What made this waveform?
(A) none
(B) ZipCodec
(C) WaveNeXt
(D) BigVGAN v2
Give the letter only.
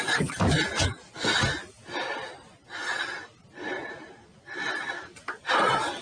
A